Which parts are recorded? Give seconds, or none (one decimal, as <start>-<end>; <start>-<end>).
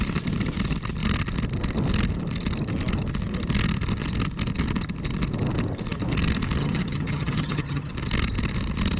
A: 0.0-6.6; 7.9-9.0